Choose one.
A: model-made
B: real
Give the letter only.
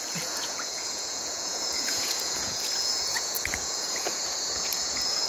A